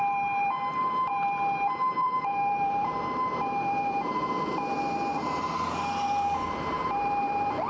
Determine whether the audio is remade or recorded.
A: remade